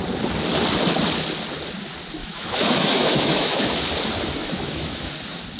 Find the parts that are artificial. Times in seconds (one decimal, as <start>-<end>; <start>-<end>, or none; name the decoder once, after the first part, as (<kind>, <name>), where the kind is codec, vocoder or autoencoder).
2.2-3.8 (autoencoder, DAC-VAE); 4.4-5.1